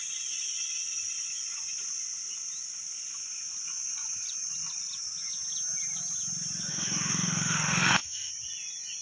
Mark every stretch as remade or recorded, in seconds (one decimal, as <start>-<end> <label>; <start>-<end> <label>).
0.0-6.7 recorded; 6.7-8.3 remade; 8.3-9.0 recorded